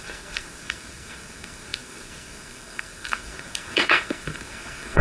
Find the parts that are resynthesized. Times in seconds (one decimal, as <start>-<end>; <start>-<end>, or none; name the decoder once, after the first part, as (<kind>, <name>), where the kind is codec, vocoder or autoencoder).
0.0-5.0 (codec, SNAC)